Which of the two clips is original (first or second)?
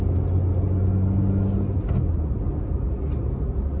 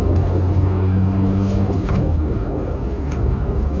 first